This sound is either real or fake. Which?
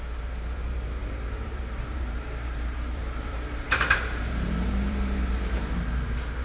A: fake